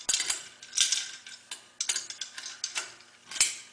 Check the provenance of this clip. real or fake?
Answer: real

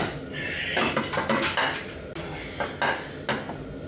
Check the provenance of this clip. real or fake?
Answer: real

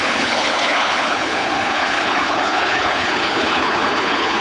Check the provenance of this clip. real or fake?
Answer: fake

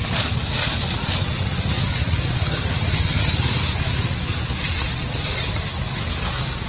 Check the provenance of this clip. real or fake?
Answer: real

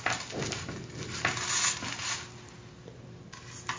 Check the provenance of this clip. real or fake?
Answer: real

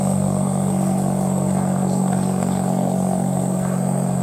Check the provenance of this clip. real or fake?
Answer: fake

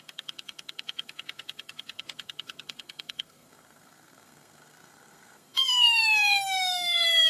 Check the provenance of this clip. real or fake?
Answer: fake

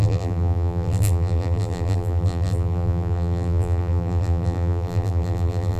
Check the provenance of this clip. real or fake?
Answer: fake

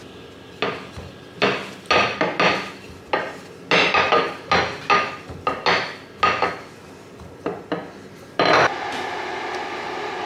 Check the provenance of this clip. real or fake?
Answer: real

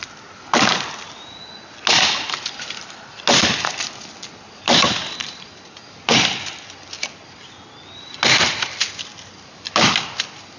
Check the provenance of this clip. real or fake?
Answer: real